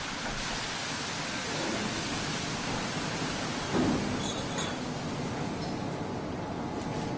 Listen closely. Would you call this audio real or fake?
real